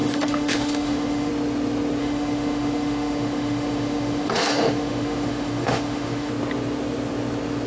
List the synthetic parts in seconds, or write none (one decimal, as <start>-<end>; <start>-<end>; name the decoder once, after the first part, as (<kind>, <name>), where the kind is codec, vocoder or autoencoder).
0.0-1.3 (autoencoder, DAC-VAE); 2.0-6.3